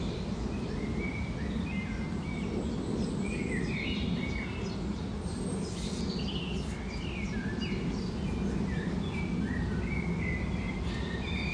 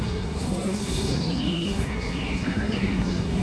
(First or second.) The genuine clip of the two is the first